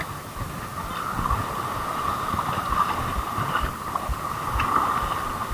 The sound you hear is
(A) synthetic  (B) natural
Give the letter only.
B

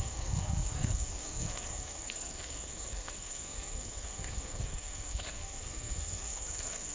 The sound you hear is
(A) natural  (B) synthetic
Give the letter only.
B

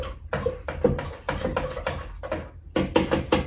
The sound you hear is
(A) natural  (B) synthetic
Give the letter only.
A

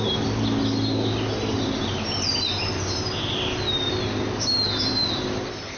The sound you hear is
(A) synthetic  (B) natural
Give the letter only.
B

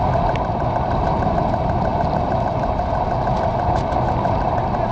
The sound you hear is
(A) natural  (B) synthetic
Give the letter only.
A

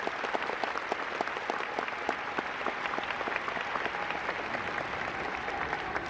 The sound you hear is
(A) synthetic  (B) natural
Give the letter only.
B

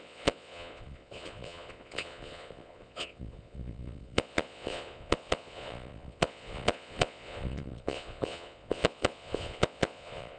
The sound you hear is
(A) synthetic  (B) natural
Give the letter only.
A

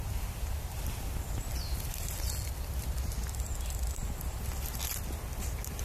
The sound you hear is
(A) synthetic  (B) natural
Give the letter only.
B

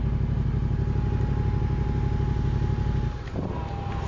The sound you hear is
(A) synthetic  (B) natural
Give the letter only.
B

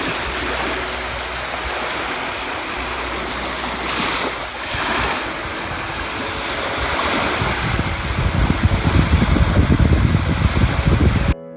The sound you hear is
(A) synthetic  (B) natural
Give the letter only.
B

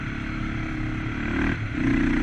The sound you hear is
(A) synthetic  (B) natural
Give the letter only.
B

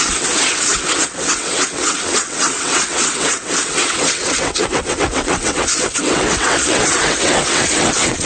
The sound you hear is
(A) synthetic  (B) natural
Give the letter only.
A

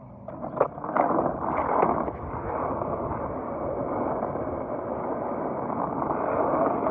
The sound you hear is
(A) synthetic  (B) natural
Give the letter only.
B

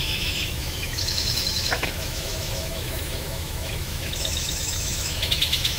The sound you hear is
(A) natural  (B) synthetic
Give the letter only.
B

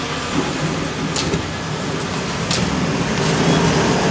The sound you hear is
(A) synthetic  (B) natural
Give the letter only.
B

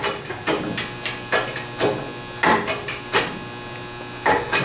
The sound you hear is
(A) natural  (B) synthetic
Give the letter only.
A